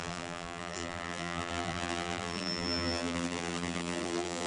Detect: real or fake fake